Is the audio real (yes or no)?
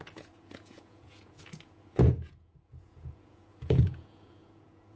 no